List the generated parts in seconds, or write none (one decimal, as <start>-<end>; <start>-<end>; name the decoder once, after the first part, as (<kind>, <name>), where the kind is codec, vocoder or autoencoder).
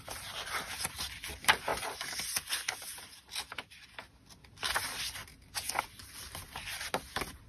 none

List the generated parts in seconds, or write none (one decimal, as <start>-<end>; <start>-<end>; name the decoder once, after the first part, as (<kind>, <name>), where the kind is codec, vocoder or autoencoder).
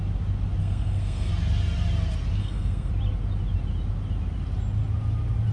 0.6-1.3 (codec, SNAC); 2.4-2.9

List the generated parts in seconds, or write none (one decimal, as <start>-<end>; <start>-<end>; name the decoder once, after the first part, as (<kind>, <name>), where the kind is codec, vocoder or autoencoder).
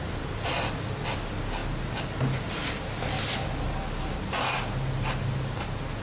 none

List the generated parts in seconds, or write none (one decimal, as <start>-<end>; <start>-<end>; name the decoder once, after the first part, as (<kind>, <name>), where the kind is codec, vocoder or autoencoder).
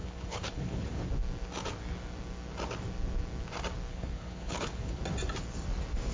0.0-1.1 (codec, HILCodec); 3.9-5.0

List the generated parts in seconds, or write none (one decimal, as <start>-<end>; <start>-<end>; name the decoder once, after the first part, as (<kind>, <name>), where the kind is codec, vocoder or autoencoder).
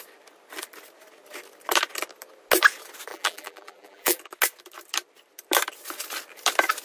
3.1-4.2 (vocoder, BigVGAN v2)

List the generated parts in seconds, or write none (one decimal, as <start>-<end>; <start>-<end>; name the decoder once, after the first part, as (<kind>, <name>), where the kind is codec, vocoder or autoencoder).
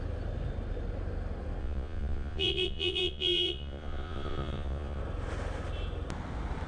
1.6-5.0 (vocoder, Vocos)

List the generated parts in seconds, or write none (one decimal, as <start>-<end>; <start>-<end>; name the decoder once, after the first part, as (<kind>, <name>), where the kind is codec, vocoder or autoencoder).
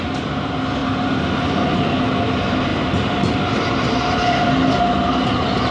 none